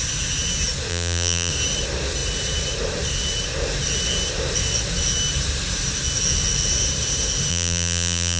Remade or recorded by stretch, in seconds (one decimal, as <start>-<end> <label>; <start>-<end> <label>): 0.0-0.9 recorded; 0.9-1.5 remade; 1.5-7.5 recorded; 7.5-8.4 remade